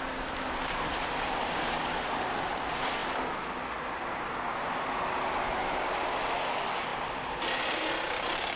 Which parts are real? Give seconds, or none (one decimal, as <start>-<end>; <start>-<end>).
0.0-8.6